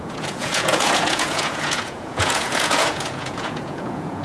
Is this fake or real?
fake